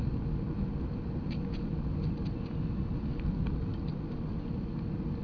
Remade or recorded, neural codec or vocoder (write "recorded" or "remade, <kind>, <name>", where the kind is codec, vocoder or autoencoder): recorded